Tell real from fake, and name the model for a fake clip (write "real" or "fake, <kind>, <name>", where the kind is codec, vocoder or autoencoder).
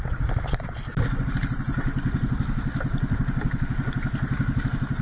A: real